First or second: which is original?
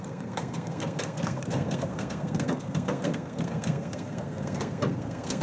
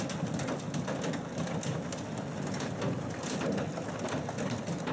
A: second